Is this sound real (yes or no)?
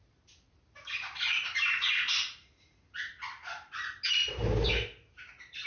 yes